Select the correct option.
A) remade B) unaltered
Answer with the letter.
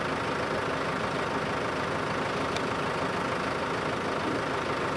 B